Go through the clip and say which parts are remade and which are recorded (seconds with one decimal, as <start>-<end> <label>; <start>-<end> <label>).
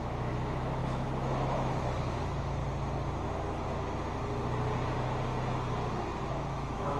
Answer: 0.0-2.6 remade; 2.6-6.3 recorded; 6.3-7.0 remade